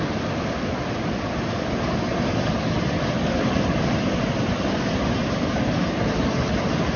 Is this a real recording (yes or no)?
yes